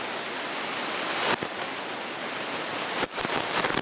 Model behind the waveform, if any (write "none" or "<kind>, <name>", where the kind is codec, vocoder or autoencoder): none